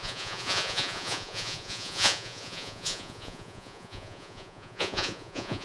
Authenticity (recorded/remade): remade